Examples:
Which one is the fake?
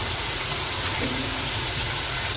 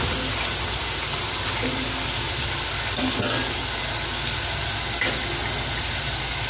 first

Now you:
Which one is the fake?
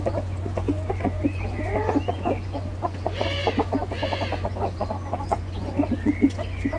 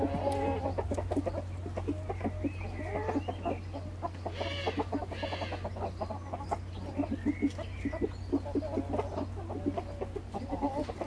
first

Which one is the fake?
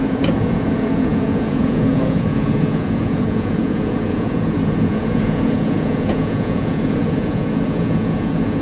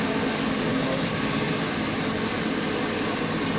first